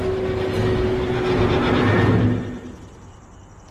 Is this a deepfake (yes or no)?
no